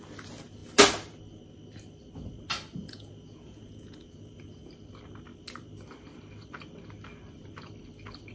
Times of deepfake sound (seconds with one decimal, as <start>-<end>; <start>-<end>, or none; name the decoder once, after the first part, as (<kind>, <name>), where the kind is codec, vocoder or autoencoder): 2.8-4.7 (vocoder, Vocos)